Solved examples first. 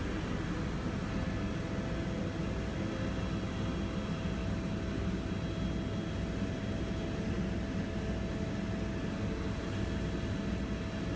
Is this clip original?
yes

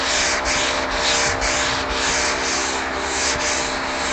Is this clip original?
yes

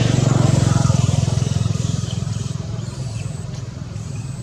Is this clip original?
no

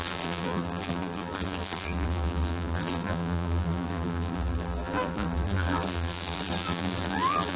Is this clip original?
no